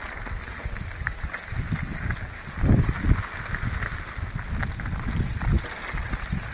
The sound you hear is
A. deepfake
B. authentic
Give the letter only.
B